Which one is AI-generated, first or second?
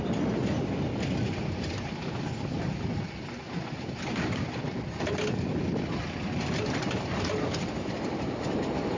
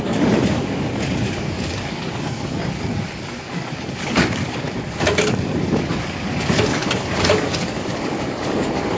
second